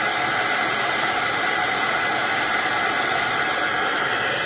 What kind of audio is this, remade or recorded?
recorded